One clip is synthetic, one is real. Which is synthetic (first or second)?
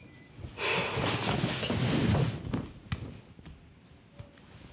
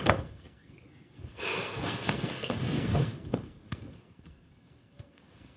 second